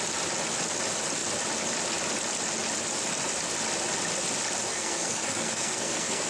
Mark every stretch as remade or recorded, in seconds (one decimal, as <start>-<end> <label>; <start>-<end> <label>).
0.0-4.7 recorded; 4.7-6.3 remade